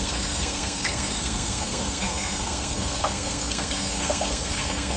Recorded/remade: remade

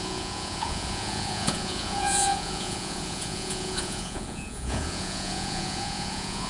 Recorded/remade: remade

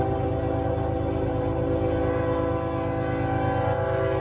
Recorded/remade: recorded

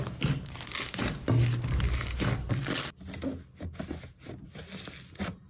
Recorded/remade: recorded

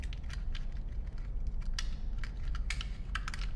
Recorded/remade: recorded